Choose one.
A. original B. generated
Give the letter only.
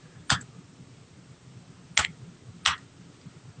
A